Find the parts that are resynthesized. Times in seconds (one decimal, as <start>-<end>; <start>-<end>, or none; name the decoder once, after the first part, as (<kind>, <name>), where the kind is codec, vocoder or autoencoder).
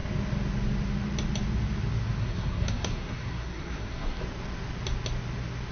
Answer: 2.2-4.2 (codec, SNAC)